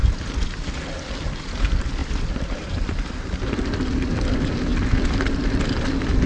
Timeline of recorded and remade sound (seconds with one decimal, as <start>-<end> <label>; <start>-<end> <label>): 0.0-2.0 recorded; 2.0-3.7 remade; 3.7-6.3 recorded